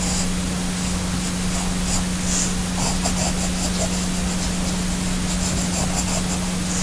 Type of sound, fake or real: real